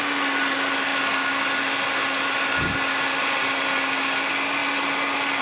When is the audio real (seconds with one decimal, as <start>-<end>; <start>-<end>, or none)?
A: 0.0-5.4